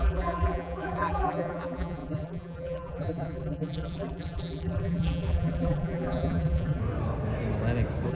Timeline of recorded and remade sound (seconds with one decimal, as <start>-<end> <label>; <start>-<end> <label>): 0.0-6.8 remade; 6.8-8.1 recorded